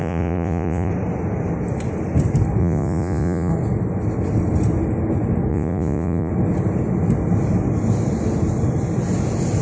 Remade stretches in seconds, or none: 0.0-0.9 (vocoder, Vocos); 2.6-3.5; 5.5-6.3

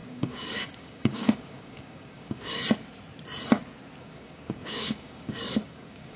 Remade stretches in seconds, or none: 0.0-2.6 (codec, DAC); 4.0-6.2

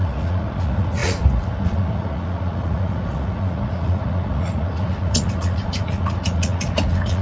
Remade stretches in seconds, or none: 0.0-7.2 (vocoder, Vocos)

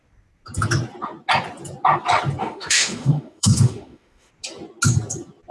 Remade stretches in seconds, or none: 2.4-4.3 (autoencoder, DAC-VAE)

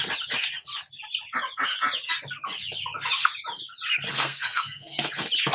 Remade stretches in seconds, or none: 4.1-5.1 (codec, SNAC)

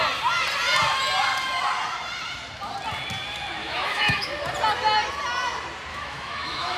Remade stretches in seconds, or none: 3.6-4.3 (autoencoder, DAC-VAE); 5.9-6.8

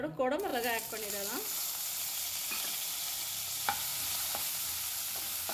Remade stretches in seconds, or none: 3.9-4.9 (vocoder, BigVGAN v2)

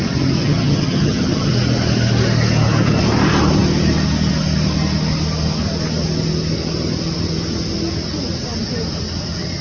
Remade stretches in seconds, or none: 0.4-1.5 (vocoder, HiFi-GAN)